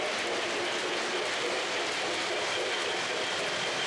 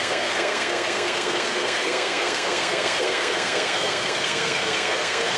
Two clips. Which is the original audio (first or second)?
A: first